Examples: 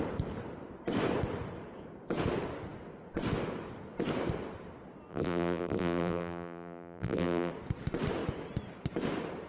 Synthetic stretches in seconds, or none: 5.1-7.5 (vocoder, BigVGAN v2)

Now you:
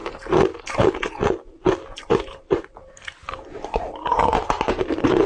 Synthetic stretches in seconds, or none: 2.0-5.3 (vocoder, BigVGAN v2)

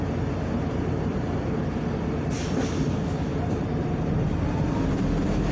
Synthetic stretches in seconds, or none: none